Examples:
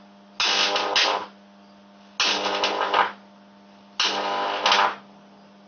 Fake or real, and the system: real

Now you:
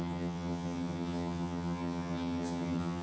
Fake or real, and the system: fake, vocoder, HiFi-GAN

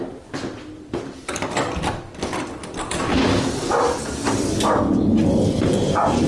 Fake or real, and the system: fake, vocoder, BigVGAN v2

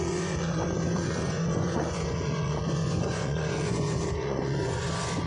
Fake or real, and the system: fake, vocoder, Vocos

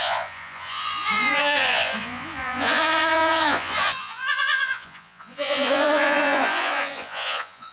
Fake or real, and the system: fake, vocoder, Vocos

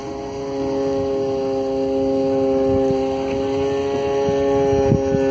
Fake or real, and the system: real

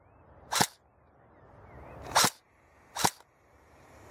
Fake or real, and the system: real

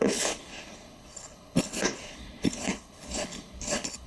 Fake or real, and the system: fake, codec, HILCodec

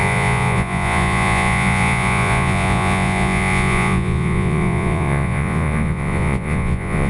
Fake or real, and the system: fake, vocoder, Vocos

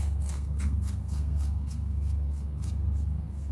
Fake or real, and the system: fake, codec, SNAC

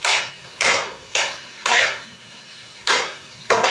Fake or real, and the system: fake, codec, SNAC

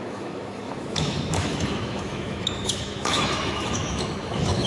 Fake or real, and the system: fake, autoencoder, DAC-VAE